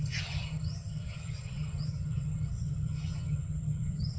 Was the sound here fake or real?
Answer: fake